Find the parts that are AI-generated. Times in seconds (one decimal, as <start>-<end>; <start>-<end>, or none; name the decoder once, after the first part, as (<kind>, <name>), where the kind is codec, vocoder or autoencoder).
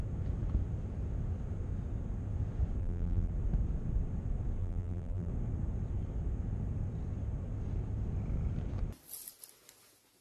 2.8-3.3 (vocoder, BigVGAN v2); 4.6-5.3